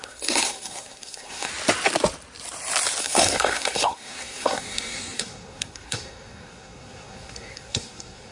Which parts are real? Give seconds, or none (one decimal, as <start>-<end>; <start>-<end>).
1.5-3.0